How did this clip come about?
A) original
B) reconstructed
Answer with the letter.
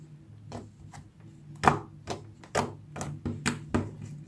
A